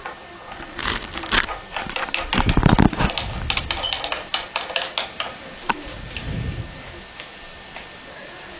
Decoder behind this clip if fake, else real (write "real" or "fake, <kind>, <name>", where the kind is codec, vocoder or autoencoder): real